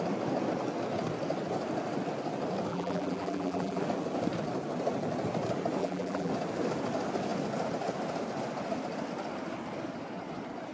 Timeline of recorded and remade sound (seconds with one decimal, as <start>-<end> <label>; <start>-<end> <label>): 0.0-2.7 recorded; 2.7-3.8 remade; 3.8-5.8 recorded; 5.8-6.3 remade; 6.3-10.7 recorded